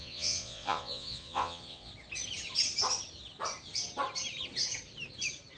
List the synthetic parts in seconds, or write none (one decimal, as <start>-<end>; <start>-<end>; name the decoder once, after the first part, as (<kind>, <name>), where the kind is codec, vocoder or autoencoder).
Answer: 0.0-1.9 (vocoder, Vocos)